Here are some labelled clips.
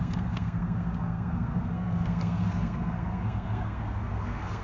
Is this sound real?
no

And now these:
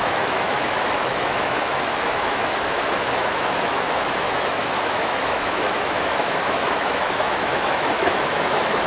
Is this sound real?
no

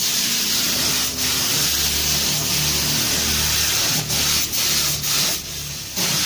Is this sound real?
yes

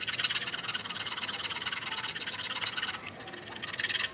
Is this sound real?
yes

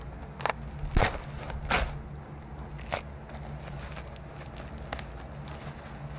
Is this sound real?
yes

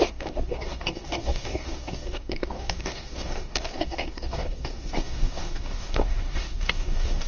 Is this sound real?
no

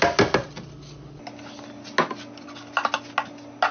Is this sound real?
yes